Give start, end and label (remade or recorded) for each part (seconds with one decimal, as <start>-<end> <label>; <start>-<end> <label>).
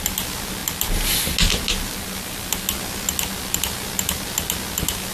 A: 0.0-5.1 recorded